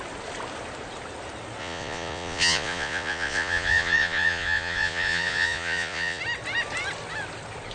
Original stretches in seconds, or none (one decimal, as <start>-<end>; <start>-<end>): 0.0-1.6; 6.2-7.7